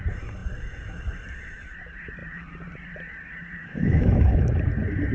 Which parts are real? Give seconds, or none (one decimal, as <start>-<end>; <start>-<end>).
0.0-3.6; 4.4-5.1